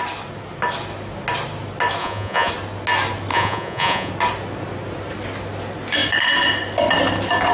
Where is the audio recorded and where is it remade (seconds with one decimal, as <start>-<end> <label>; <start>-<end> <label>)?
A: 0.0-2.0 recorded; 2.0-2.5 remade; 2.5-3.3 recorded; 3.3-4.1 remade; 4.1-7.5 recorded